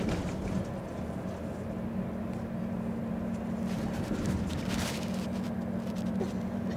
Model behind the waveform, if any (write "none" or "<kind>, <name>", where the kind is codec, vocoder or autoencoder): vocoder, BigVGAN v2